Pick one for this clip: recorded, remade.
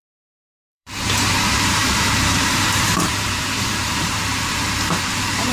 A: remade